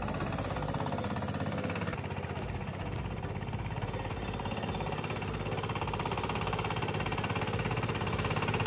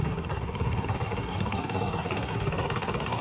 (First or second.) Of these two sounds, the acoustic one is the first